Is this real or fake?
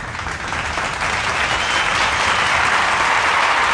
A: real